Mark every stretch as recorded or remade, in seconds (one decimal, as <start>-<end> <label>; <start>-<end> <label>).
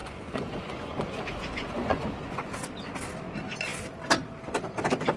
0.0-2.5 remade; 2.5-5.2 recorded